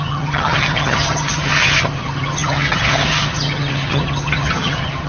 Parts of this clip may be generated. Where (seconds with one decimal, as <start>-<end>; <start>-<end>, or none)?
0.0-5.1